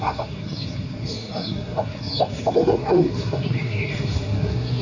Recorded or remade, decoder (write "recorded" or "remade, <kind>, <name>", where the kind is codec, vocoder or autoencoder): remade, codec, SNAC